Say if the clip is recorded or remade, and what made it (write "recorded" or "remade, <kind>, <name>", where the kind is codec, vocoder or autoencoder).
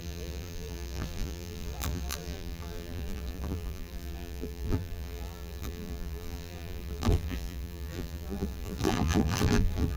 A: remade, vocoder, BigVGAN v2